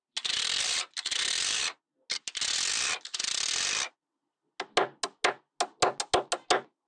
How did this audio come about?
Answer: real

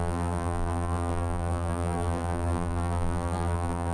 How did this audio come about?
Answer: fake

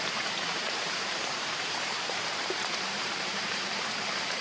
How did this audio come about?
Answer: fake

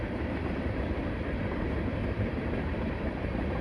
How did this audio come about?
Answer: fake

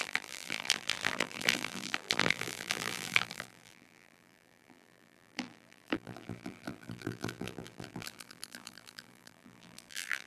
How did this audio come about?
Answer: fake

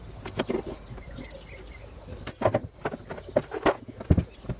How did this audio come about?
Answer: real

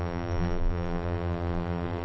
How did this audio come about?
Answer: fake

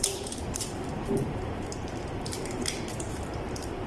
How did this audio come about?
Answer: fake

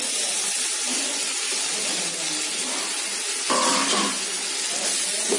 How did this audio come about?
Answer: real